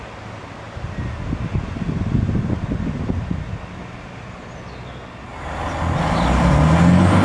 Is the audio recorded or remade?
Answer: recorded